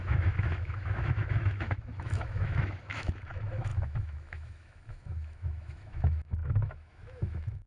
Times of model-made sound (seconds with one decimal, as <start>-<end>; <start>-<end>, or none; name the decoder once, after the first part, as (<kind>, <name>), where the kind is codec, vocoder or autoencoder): 0.0-7.7 (autoencoder, DAC-VAE)